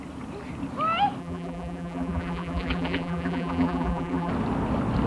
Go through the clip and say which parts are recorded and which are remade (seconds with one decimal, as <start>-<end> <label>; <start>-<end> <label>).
0.0-1.2 recorded; 1.2-4.3 remade; 4.3-5.1 recorded